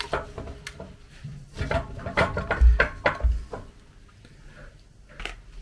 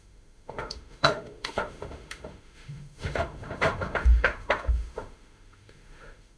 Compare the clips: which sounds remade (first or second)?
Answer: second